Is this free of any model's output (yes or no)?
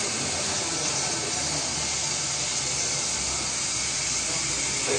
yes